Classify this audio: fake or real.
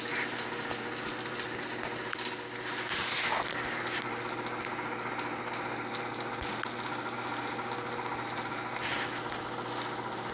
real